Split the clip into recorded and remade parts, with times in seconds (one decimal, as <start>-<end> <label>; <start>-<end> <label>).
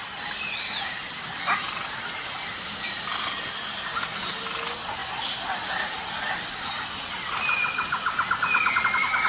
0.0-9.3 recorded